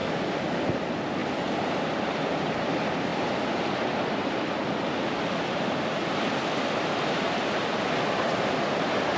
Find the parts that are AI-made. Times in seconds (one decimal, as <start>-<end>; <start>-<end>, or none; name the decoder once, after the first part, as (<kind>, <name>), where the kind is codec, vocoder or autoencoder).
0.6-9.2 (vocoder, BigVGAN v2)